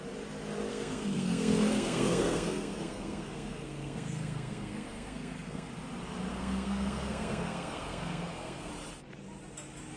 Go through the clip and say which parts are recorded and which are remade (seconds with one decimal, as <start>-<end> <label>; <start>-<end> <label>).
0.0-0.7 recorded; 0.7-5.7 remade; 5.7-6.3 recorded; 6.3-8.7 remade; 8.7-10.0 recorded